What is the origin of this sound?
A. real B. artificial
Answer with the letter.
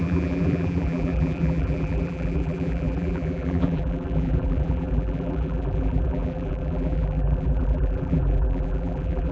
B